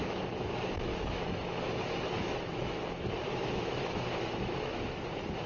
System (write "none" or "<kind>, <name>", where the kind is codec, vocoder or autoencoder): autoencoder, DAC-VAE